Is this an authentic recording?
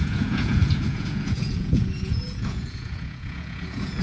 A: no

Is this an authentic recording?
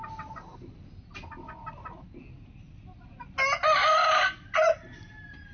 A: yes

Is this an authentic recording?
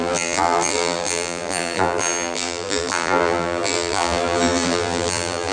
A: no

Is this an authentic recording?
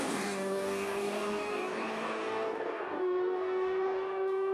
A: no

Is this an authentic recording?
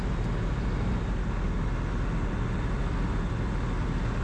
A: yes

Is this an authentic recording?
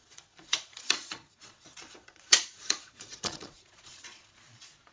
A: no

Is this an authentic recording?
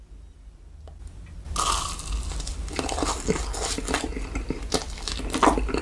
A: yes